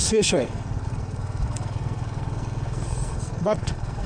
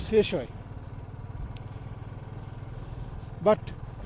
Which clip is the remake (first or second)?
first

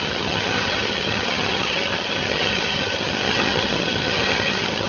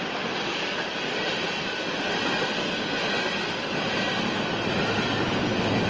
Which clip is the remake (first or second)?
first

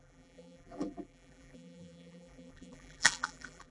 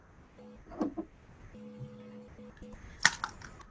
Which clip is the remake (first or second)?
first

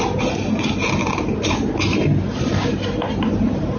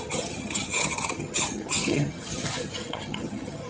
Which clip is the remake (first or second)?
second